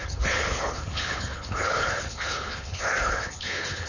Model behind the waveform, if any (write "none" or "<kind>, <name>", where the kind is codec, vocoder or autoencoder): codec, HILCodec